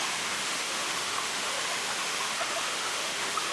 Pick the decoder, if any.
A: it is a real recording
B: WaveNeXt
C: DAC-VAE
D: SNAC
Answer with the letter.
C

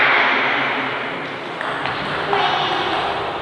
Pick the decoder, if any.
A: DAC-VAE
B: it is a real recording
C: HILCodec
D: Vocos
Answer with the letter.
B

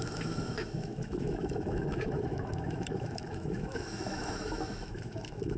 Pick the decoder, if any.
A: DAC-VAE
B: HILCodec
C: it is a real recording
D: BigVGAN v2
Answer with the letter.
A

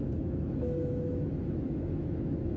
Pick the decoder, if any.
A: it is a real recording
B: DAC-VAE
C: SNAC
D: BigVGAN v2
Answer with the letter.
B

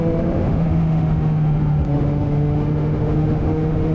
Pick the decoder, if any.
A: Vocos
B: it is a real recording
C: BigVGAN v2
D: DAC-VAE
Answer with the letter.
D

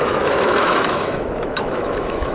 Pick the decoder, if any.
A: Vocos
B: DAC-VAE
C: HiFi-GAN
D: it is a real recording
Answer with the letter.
B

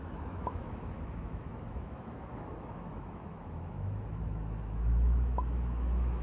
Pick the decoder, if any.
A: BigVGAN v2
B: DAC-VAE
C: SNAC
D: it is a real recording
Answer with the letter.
B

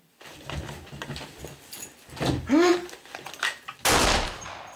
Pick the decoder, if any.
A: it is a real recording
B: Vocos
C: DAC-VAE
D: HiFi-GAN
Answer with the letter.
A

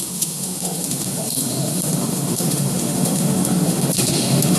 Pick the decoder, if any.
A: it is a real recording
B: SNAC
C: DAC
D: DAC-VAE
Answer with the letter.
D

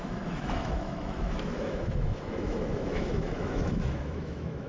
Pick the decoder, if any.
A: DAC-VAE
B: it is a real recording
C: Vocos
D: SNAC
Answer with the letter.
A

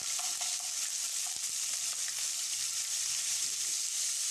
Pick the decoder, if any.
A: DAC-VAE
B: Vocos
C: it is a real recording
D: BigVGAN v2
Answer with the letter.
C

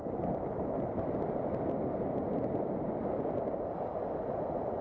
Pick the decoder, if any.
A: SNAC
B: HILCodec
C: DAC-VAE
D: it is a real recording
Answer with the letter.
D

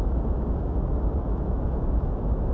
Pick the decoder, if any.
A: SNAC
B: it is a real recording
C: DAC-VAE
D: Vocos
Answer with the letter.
C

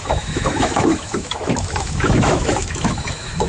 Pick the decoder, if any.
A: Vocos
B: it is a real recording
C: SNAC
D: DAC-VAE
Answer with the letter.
D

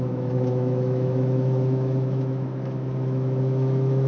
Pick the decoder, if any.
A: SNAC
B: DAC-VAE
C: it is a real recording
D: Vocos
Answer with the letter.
B